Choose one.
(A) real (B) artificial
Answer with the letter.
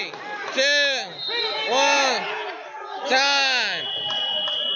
A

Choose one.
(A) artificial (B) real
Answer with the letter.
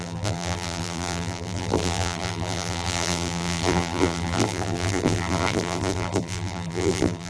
A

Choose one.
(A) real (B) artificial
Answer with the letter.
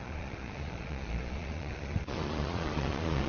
B